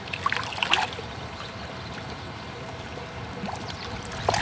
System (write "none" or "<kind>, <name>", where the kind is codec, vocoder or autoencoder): vocoder, BigVGAN v2